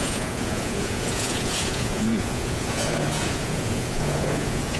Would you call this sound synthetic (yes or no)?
yes